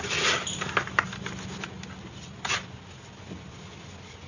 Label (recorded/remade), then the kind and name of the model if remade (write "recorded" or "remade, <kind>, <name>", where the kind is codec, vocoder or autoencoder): recorded